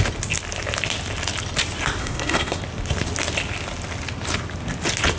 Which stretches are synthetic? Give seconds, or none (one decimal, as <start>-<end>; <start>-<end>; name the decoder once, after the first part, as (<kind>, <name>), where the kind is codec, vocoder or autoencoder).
2.0-2.6 (codec, SNAC)